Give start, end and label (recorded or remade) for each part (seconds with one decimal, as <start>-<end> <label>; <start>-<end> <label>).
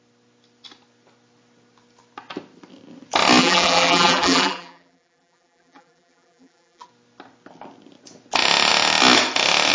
0.0-3.4 recorded; 3.4-6.9 remade; 6.9-9.7 recorded